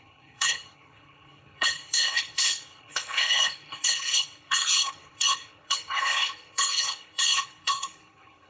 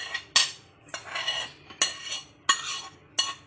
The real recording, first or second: second